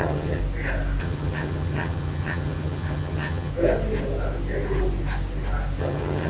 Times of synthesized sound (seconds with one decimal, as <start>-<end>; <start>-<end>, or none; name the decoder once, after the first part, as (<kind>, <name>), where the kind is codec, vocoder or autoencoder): 0.0-0.4 (vocoder, HiFi-GAN); 1.0-3.5; 5.8-6.3